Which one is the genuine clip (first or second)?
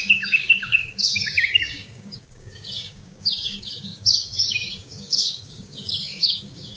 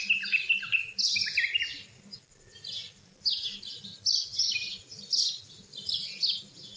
second